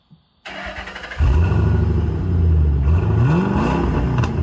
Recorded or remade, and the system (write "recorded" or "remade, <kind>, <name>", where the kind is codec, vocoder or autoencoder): recorded